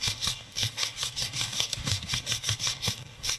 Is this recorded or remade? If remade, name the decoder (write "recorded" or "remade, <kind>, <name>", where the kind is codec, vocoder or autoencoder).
remade, codec, DAC